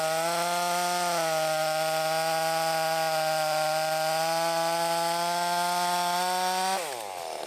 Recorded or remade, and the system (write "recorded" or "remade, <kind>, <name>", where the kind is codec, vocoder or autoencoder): recorded